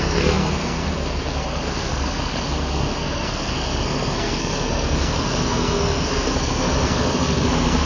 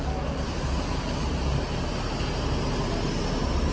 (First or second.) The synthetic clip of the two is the first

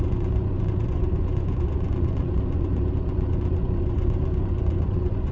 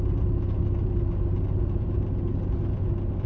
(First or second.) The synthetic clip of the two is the first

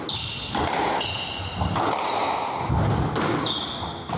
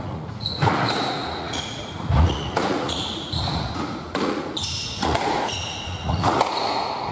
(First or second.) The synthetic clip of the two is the second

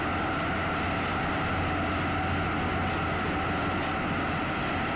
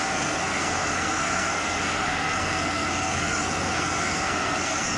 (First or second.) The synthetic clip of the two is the second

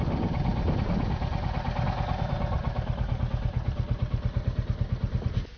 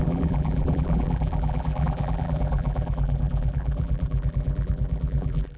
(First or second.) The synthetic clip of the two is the second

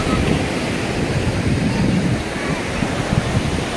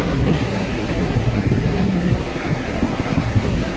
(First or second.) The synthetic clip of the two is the second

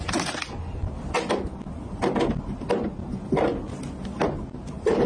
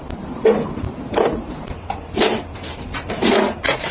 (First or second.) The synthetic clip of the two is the second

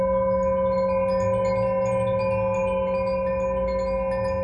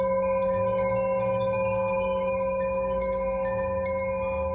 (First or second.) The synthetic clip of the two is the second